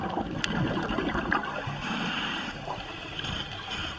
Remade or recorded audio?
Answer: recorded